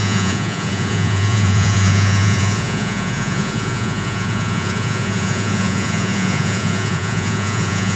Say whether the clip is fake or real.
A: fake